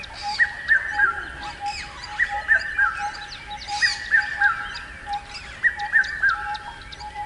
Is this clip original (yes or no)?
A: yes